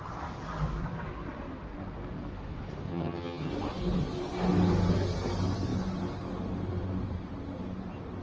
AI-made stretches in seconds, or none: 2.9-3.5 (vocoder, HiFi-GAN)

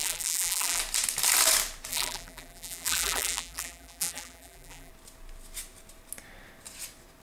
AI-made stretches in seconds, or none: 0.0-0.8 (vocoder, BigVGAN v2); 1.9-4.9